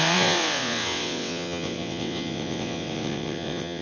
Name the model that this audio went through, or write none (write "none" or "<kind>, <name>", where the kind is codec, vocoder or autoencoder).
vocoder, WaveNeXt